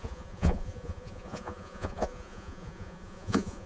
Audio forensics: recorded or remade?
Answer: remade